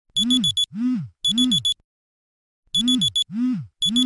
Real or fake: real